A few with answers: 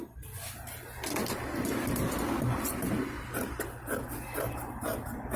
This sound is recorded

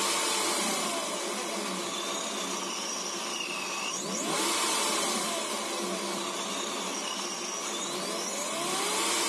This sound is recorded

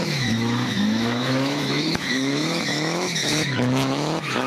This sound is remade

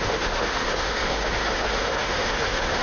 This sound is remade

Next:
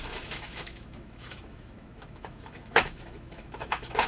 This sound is remade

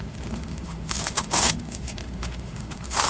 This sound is remade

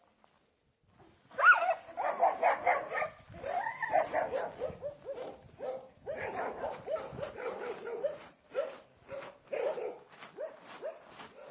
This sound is recorded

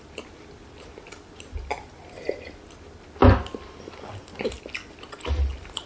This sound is recorded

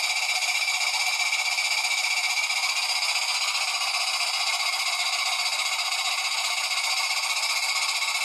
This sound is recorded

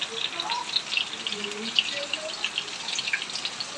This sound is recorded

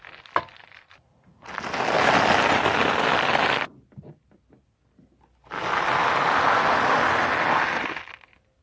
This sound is recorded